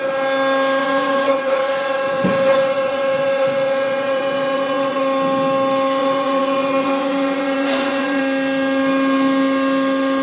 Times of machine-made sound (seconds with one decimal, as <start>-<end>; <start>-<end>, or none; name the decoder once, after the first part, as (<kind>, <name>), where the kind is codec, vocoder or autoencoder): 0.8-5.0 (vocoder, Vocos); 6.0-8.2

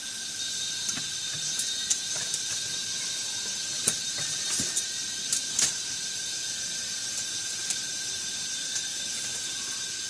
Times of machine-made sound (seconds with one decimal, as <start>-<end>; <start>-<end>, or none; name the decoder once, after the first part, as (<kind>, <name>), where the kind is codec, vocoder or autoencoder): 8.9-9.5 (vocoder, BigVGAN v2)

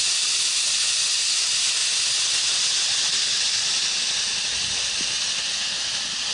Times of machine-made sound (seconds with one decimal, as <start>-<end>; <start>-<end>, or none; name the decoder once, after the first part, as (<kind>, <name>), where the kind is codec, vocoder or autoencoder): none

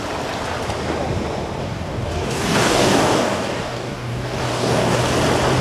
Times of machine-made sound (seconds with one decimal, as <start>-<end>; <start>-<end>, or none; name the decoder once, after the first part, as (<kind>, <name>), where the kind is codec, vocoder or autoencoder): 1.6-5.0 (codec, DAC)

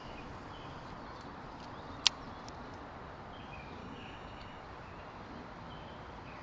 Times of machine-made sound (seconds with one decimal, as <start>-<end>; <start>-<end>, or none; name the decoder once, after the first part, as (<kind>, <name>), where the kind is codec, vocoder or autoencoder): 3.8-4.6 (codec, DAC)

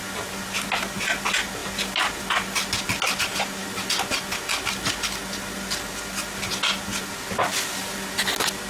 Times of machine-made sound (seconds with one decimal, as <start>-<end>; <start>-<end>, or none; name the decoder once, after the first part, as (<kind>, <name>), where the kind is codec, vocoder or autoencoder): none

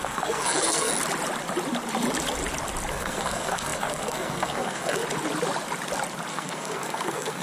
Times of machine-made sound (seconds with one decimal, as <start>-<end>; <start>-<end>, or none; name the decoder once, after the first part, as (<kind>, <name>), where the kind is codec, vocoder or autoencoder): 0.0-0.9 (codec, SNAC); 2.9-5.0; 6.3-7.4